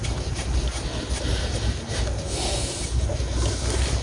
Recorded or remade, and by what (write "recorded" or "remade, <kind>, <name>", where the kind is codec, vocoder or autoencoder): recorded